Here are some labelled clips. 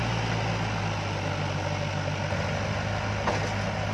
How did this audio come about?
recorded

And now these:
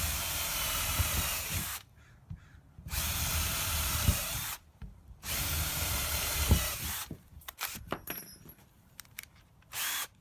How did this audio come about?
remade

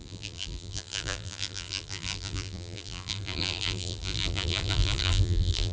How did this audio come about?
remade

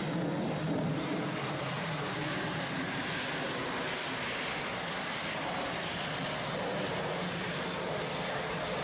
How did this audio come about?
recorded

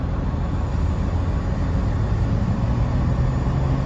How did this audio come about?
recorded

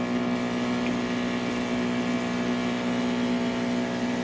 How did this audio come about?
recorded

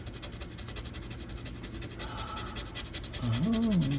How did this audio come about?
recorded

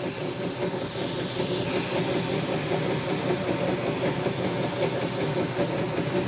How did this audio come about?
recorded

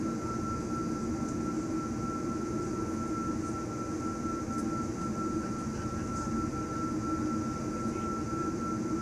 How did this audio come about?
recorded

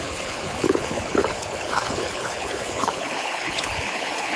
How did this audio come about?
remade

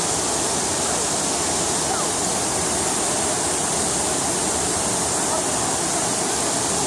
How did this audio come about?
recorded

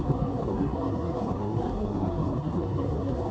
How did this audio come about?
remade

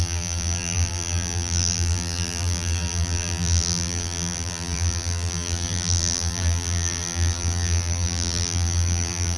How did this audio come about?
remade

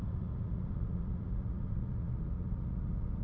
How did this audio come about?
remade